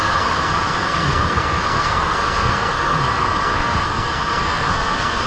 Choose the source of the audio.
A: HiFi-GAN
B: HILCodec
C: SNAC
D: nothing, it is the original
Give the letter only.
C